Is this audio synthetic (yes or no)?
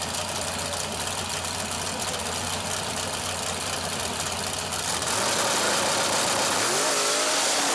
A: no